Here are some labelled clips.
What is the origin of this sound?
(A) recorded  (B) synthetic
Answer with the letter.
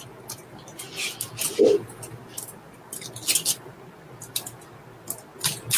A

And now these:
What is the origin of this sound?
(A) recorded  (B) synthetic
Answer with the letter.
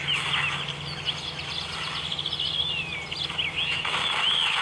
A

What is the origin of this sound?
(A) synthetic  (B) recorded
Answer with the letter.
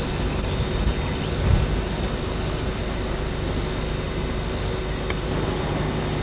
B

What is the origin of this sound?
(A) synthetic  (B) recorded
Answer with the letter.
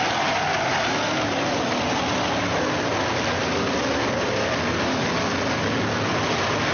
B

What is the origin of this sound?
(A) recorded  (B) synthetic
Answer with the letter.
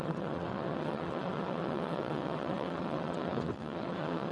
B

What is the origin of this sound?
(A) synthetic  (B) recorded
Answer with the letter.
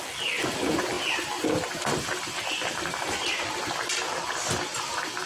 B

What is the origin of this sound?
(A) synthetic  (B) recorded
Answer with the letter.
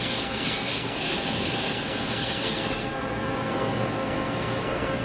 A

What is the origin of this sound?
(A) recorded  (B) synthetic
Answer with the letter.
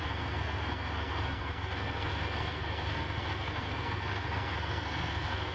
B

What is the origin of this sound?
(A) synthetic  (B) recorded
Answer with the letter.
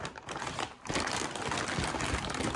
B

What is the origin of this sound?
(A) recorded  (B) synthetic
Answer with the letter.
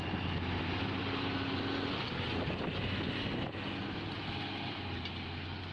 A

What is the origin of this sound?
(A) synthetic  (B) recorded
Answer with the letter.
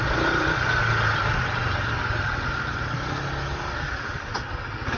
B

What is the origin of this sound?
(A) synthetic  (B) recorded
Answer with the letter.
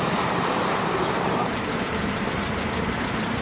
A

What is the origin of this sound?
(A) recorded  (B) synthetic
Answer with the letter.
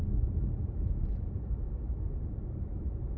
B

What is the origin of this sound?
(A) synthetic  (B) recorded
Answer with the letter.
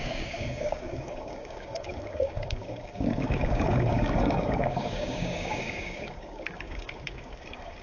A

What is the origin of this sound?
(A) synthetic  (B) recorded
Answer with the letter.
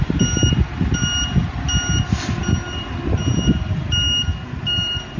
B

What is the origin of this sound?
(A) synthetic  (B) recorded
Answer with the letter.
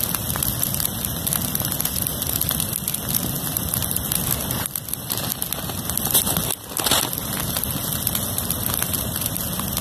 B